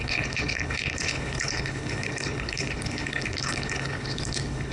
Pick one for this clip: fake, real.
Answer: fake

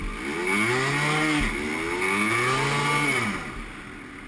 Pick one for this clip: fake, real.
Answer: real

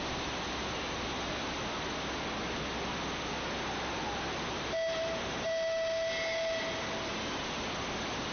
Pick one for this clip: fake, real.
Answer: real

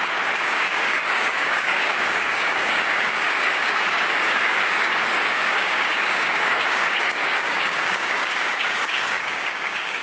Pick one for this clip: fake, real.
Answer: fake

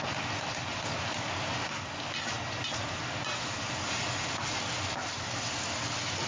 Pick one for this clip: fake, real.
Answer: real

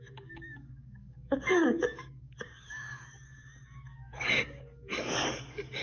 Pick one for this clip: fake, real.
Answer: fake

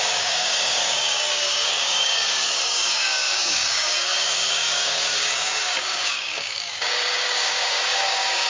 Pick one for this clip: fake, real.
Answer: fake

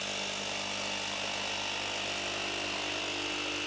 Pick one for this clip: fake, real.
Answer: real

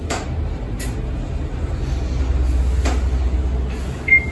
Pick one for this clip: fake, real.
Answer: real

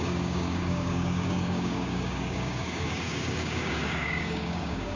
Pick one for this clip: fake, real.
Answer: fake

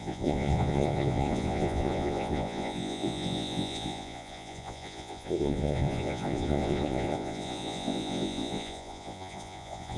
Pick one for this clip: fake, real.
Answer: fake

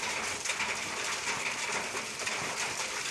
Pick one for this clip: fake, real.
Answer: real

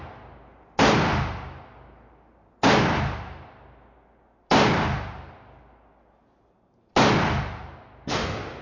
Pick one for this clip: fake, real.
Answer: real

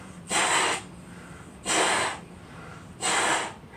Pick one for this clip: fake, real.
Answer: real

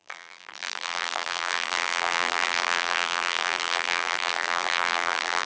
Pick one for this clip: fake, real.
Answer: fake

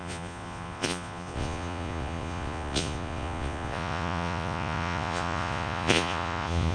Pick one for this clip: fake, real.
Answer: fake